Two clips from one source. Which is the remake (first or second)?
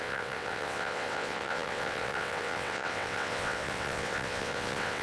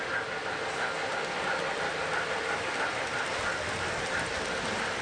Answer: first